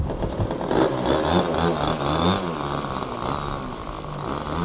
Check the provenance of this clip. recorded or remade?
recorded